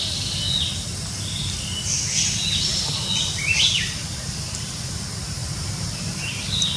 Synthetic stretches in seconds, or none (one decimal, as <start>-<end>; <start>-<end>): 4.0-4.9; 5.4-6.8